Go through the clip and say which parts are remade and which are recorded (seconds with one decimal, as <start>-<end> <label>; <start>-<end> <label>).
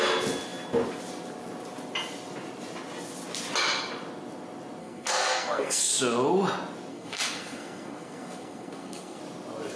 0.0-4.8 recorded; 4.8-5.9 remade; 5.9-6.9 recorded; 6.9-9.2 remade; 9.2-9.8 recorded